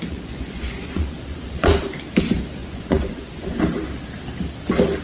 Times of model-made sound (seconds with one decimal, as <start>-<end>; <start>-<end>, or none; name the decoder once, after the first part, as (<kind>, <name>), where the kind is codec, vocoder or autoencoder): 0.0-1.7 (vocoder, Vocos); 2.6-3.6